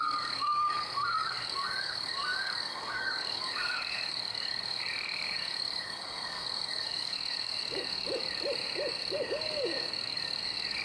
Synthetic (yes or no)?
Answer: yes